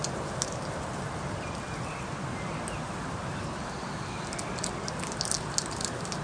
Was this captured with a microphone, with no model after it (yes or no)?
yes